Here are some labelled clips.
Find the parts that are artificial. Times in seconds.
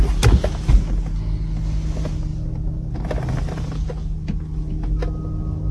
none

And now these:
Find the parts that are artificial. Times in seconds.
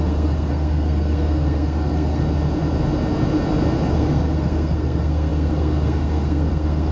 0.0-2.2; 3.9-6.9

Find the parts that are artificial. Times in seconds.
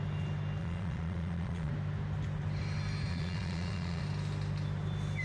0.6-1.7; 3.1-4.0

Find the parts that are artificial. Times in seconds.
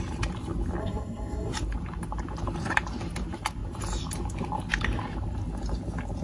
0.8-1.5